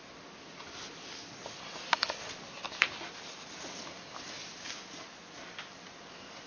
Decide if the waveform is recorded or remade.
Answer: recorded